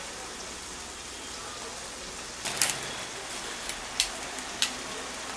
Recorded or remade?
recorded